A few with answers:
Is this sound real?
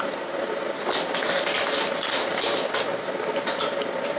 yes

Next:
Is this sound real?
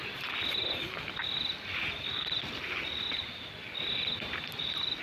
yes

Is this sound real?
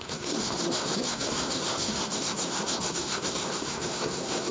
no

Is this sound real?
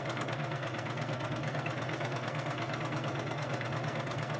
no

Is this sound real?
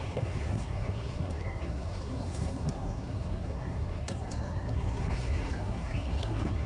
no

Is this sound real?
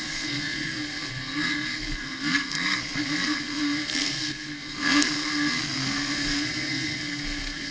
no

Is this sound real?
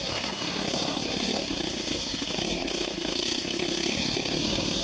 no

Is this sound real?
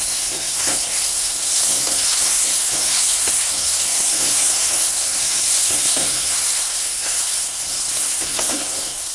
no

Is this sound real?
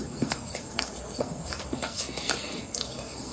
no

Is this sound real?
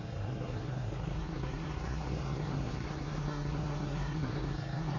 no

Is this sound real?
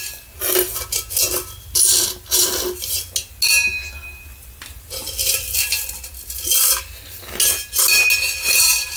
yes